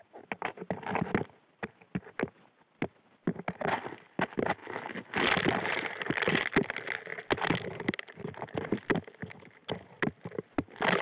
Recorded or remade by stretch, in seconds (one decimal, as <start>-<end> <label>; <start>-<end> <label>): 0.0-11.0 recorded